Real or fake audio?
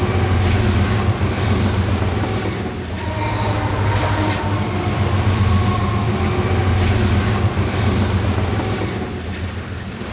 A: real